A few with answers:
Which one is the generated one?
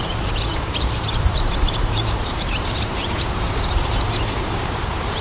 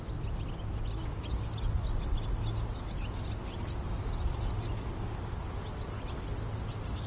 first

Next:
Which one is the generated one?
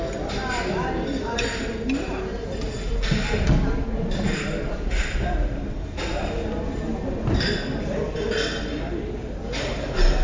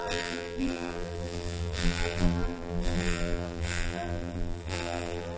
second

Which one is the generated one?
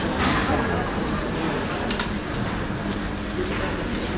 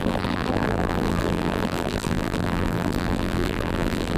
second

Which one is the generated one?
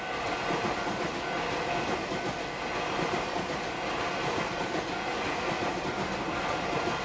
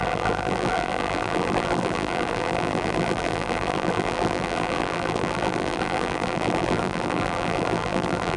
second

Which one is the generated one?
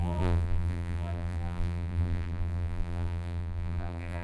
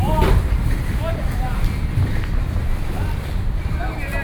first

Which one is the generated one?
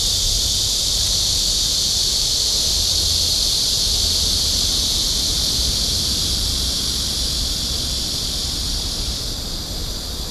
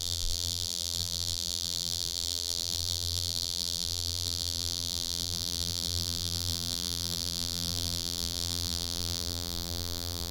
second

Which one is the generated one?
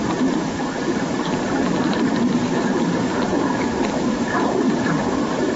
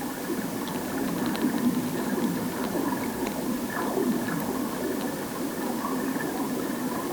first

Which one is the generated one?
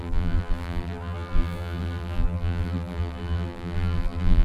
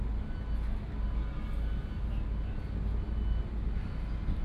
first